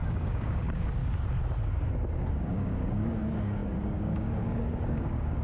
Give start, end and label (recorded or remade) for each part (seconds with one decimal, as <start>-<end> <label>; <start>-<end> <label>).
0.0-1.0 remade; 1.0-2.3 recorded; 2.3-5.4 remade